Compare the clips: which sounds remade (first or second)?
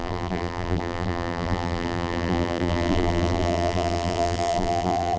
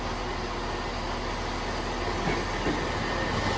first